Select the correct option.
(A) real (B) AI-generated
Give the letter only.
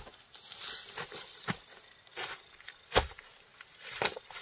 A